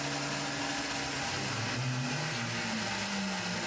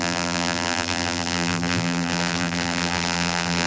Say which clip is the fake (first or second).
second